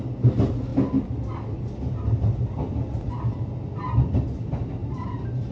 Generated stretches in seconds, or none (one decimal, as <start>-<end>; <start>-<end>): 4.8-5.5